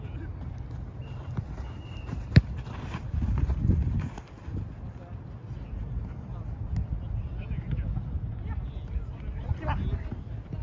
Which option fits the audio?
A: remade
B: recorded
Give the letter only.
B